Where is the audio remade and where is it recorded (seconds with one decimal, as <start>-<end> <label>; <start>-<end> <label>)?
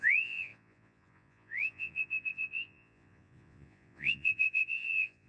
0.0-5.3 remade